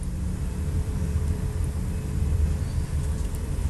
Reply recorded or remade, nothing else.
remade